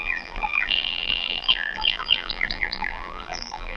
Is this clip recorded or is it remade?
remade